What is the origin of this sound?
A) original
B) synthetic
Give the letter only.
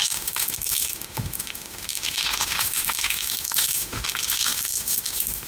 B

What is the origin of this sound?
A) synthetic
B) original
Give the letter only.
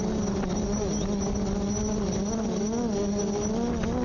B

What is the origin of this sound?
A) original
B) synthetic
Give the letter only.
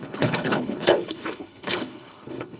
B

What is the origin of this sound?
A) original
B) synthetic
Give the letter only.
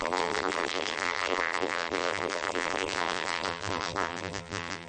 B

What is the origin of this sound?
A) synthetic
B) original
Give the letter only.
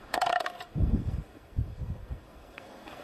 A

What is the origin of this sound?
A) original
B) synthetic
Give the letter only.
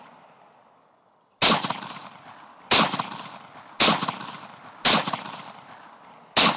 A